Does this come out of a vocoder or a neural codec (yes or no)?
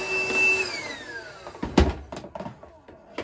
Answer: no